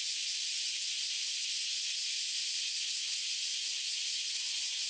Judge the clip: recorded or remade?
recorded